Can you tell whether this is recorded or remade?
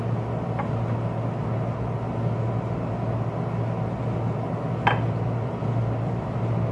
recorded